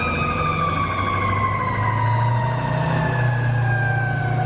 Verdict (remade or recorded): recorded